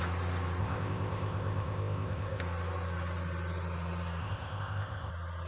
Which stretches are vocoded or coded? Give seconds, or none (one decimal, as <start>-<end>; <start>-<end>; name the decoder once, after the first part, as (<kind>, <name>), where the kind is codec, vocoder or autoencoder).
0.6-2.4 (codec, ZipCodec); 4.2-5.1